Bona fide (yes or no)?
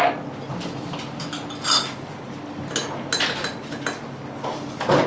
yes